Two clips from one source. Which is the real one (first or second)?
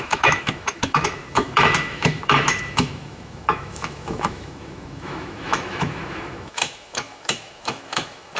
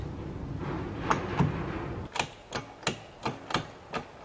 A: second